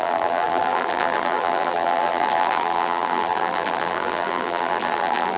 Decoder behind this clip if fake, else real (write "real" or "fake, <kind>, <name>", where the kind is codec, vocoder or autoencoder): fake, vocoder, BigVGAN v2